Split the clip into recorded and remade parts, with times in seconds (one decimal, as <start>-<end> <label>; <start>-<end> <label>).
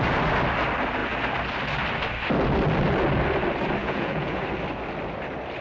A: 0.0-3.8 recorded; 3.8-4.4 remade; 4.4-5.6 recorded